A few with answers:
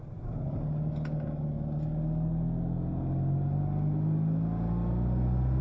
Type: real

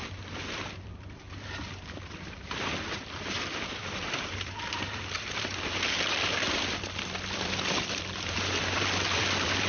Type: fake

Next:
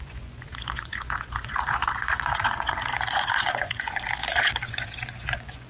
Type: fake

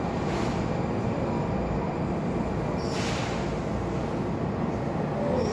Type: real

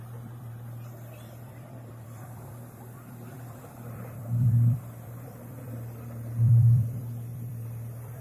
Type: fake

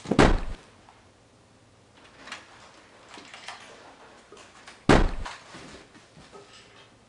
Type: real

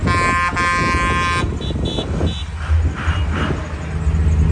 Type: real